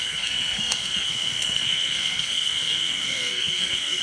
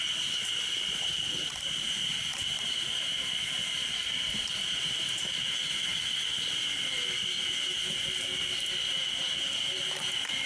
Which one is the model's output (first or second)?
first